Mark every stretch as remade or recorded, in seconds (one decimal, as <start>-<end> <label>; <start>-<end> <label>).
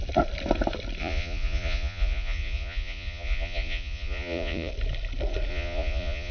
0.0-1.0 recorded; 1.0-4.7 remade; 4.7-5.5 recorded; 5.5-6.3 remade